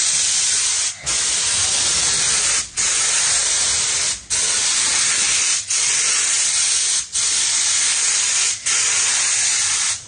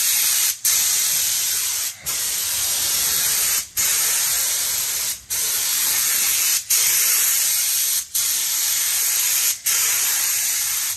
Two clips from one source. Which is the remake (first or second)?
second